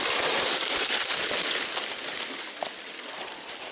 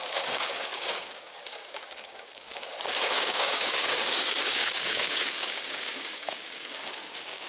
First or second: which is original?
first